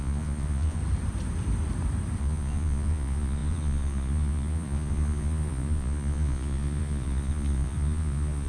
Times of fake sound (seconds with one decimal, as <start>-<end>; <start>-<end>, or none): 0.0-0.8; 2.2-8.5